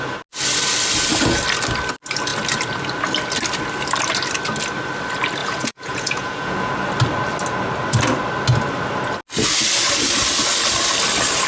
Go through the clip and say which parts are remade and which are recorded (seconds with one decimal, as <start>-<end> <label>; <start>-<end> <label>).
0.0-5.4 recorded; 5.4-6.7 remade; 6.7-11.5 recorded

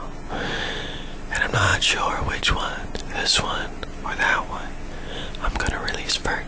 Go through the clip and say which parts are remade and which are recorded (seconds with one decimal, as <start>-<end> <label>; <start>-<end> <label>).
0.0-6.5 recorded

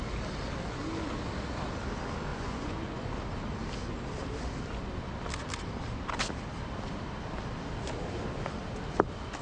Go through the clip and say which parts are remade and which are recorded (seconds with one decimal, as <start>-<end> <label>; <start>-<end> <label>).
0.0-2.3 recorded; 2.3-3.1 remade; 3.1-9.4 recorded